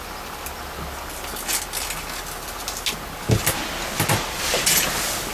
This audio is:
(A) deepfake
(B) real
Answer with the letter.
B